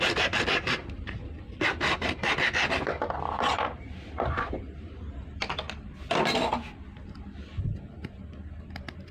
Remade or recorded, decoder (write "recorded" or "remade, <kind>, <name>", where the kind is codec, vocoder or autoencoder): recorded